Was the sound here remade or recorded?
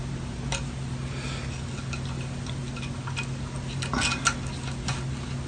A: recorded